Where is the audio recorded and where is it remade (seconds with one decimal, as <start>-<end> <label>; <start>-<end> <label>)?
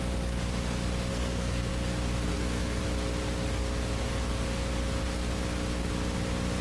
0.0-1.1 recorded; 1.1-1.7 remade; 1.7-2.3 recorded; 2.3-2.8 remade; 2.8-6.6 recorded